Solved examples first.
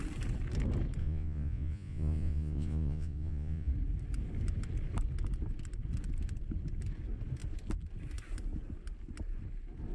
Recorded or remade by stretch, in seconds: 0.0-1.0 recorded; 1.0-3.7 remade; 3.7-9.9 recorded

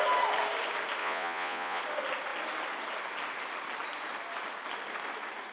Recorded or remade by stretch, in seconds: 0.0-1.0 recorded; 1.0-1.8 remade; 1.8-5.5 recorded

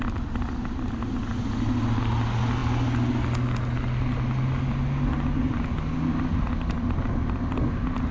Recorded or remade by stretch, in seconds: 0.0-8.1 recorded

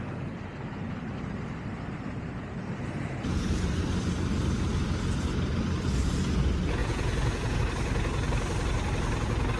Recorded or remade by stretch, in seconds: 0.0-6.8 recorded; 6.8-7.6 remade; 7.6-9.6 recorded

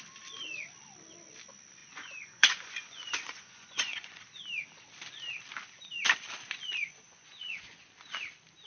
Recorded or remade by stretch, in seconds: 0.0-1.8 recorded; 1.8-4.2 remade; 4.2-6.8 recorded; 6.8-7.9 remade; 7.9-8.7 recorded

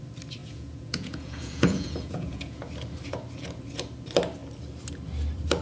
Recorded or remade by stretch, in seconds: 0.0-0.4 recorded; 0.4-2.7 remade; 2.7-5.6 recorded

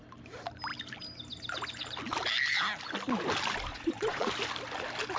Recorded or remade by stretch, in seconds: 0.0-3.7 recorded; 3.7-4.3 remade; 4.3-5.2 recorded